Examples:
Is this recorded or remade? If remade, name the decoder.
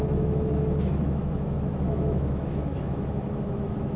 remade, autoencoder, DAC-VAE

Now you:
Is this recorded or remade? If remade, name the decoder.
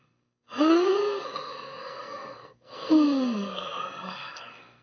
remade, codec, SNAC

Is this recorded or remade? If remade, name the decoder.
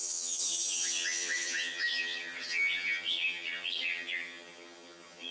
remade, vocoder, HiFi-GAN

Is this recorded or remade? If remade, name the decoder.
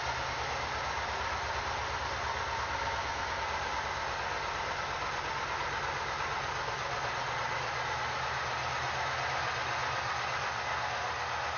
recorded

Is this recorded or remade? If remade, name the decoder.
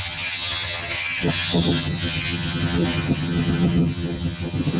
remade, vocoder, HiFi-GAN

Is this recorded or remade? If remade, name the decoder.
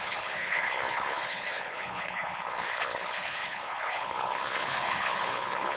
remade, codec, HILCodec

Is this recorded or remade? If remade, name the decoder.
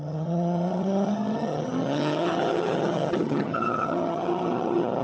remade, vocoder, HiFi-GAN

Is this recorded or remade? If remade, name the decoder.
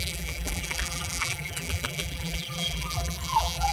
remade, vocoder, BigVGAN v2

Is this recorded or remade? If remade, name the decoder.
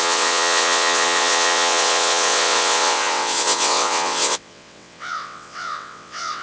remade, vocoder, WaveNeXt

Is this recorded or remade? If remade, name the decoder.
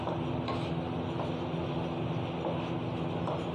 recorded